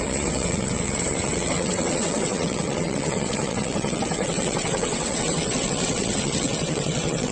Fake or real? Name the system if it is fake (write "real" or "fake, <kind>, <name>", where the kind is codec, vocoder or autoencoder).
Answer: fake, vocoder, WaveNeXt